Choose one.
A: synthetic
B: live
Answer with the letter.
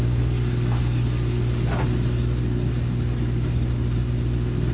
B